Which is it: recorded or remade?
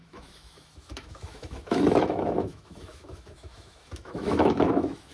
remade